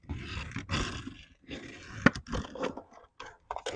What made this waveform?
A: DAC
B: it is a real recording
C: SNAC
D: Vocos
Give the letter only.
B